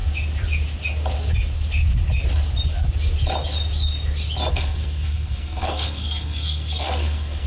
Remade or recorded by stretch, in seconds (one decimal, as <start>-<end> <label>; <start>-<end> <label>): 0.0-4.5 recorded; 4.5-7.5 remade